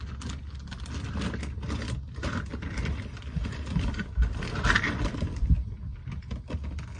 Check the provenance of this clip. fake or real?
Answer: real